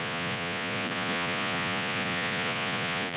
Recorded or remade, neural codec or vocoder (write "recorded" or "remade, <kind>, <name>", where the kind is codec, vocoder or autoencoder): remade, vocoder, Vocos